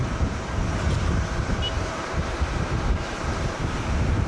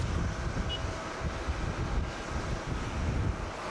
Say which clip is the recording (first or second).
second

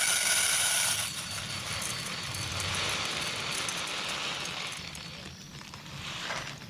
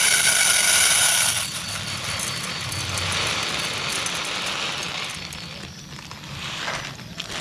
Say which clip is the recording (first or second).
second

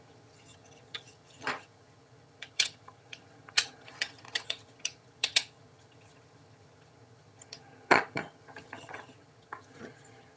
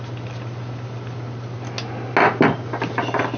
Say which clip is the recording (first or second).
second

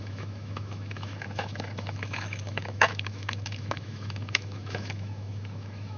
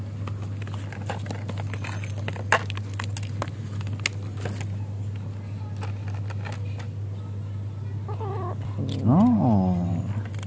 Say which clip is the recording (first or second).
second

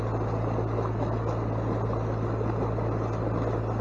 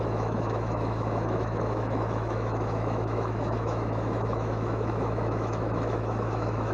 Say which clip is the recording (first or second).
first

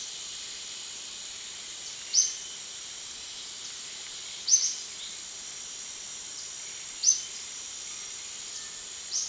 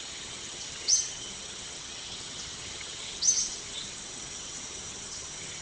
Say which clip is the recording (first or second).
first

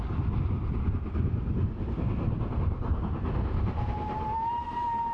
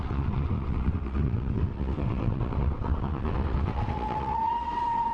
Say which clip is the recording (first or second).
first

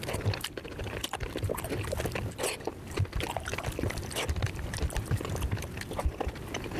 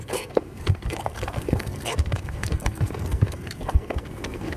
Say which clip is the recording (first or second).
first